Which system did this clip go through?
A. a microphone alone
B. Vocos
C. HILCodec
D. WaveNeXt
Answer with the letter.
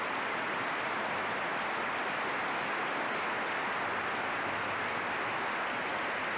A